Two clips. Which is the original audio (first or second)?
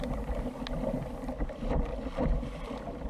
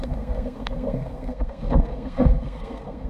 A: first